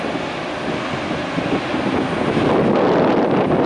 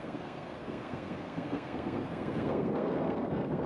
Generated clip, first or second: second